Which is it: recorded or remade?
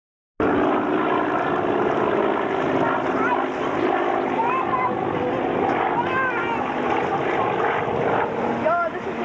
recorded